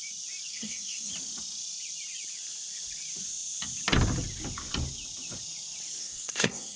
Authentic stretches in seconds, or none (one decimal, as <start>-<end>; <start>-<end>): 0.0-0.5; 1.1-6.0